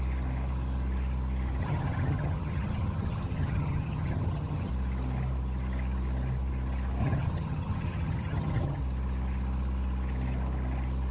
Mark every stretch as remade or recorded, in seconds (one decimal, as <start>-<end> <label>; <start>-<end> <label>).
0.0-1.6 recorded; 1.6-4.7 remade; 4.7-7.0 recorded; 7.0-8.8 remade; 8.8-11.1 recorded